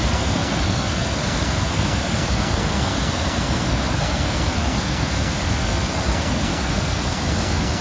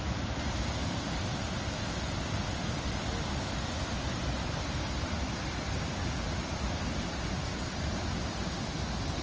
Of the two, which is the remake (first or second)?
first